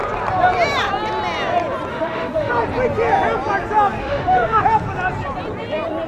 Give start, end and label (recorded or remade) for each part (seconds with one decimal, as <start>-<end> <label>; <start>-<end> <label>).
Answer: 0.0-1.9 recorded; 1.9-2.5 remade; 2.5-4.0 recorded; 4.0-4.6 remade; 4.6-6.1 recorded

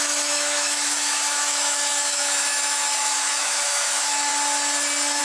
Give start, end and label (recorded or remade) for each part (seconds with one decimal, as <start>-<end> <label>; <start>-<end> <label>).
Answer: 0.0-4.3 remade; 4.3-5.2 recorded

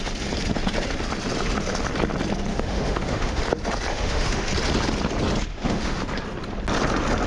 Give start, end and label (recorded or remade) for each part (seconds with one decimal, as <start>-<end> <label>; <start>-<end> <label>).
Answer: 0.0-2.5 recorded; 2.5-3.4 remade; 3.4-3.9 recorded; 3.9-4.5 remade; 4.5-5.5 recorded; 5.5-6.0 remade; 6.0-7.3 recorded

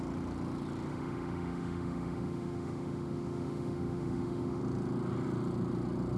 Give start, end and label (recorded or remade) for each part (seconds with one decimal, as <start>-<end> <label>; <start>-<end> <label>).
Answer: 0.0-0.9 recorded; 0.9-4.6 remade; 4.6-6.2 recorded

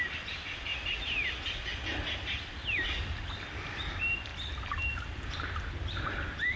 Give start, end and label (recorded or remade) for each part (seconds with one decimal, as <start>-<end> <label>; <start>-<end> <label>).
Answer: 0.0-6.6 recorded

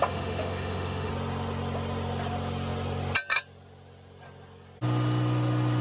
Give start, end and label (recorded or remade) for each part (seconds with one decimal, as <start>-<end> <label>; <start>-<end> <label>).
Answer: 0.0-1.1 remade; 1.1-5.8 recorded